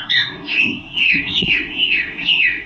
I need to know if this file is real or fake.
fake